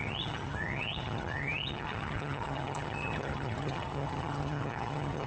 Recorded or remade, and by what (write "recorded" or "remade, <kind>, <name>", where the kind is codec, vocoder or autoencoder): remade, vocoder, HiFi-GAN